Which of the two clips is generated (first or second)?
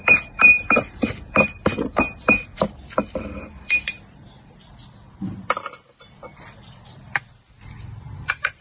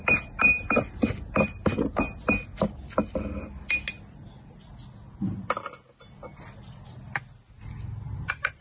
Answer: first